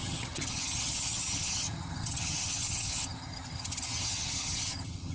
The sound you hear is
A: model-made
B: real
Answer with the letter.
A